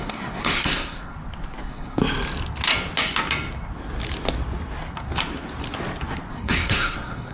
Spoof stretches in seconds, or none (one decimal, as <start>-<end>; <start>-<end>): 0.0-1.1; 1.6-2.0; 6.3-7.3